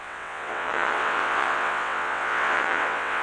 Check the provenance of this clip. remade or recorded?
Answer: remade